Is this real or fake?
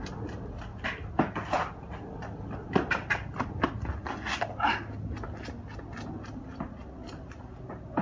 real